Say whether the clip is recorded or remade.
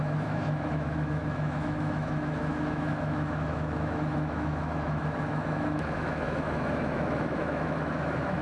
remade